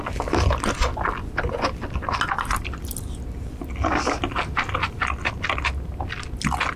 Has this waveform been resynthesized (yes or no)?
no